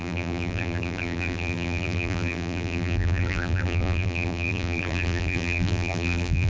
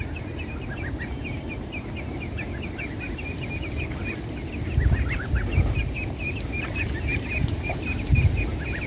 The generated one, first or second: first